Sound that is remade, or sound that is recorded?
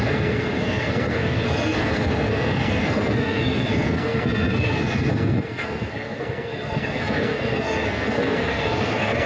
remade